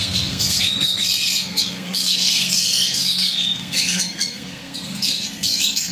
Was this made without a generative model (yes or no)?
no